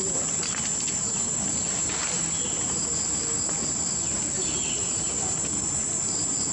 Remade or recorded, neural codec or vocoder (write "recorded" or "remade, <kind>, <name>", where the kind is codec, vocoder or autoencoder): recorded